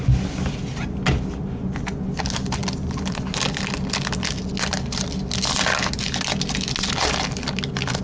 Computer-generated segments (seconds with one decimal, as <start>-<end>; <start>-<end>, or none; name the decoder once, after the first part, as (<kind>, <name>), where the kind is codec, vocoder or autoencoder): none